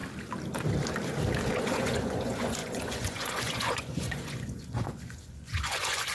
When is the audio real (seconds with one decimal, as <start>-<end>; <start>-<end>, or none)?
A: 0.0-1.6